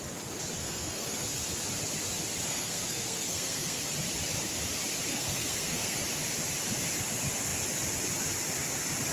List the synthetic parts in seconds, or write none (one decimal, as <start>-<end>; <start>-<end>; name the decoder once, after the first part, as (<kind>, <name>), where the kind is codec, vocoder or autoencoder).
0.6-1.3 (codec, SNAC); 2.5-3.8; 5.1-6.0